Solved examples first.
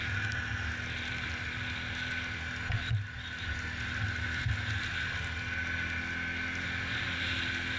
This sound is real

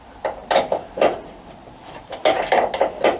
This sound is real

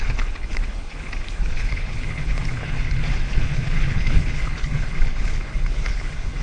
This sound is fake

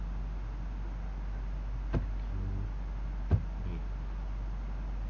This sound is real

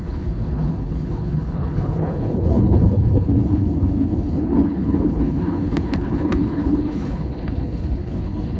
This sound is fake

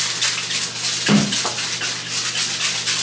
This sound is real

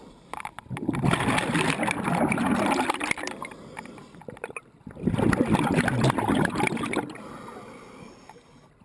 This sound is real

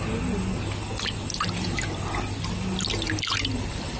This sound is real